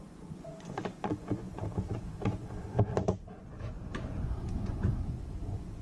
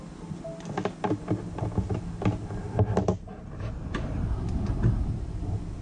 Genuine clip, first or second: second